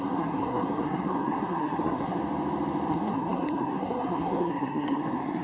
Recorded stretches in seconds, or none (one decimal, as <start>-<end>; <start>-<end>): 2.2-2.9